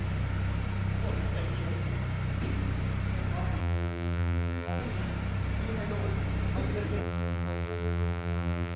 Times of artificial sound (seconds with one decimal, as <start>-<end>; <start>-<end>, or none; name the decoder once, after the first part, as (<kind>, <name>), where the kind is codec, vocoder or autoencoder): 3.6-4.8 (vocoder, BigVGAN v2); 7.0-8.8